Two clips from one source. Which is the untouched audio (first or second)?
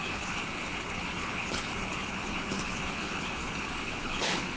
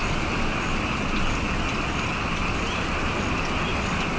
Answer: second